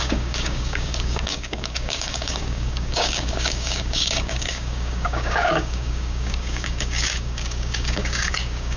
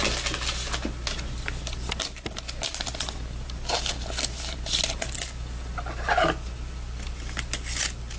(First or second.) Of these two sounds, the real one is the second